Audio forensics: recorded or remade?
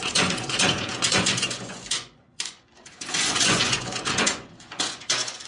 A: remade